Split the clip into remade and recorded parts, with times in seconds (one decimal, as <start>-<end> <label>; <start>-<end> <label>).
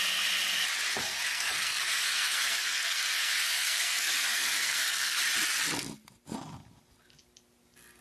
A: 0.0-1.0 recorded; 1.0-5.2 remade; 5.2-8.0 recorded